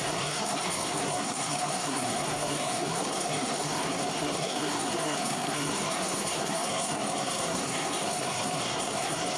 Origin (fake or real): fake